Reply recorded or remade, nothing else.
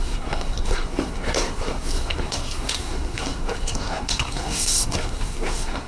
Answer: remade